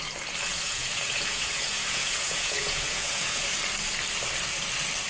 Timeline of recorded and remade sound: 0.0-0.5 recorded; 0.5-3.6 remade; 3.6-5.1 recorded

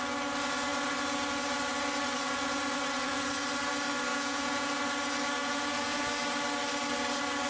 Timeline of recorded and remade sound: 0.0-4.1 recorded; 4.1-4.7 remade; 4.7-5.4 recorded; 5.4-6.1 remade; 6.1-7.5 recorded

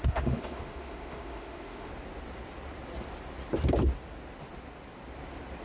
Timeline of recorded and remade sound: 0.0-1.9 remade; 1.9-5.6 recorded

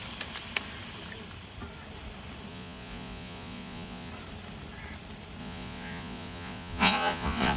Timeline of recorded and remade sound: 0.0-2.5 recorded; 2.5-4.1 remade; 4.1-5.4 recorded; 5.4-7.6 remade

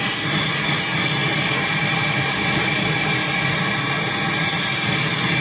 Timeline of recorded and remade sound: 0.0-5.4 recorded